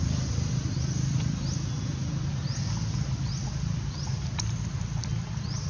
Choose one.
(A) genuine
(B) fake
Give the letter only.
A